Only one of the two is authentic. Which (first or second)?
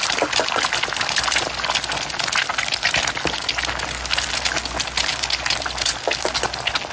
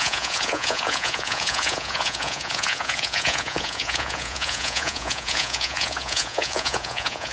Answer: first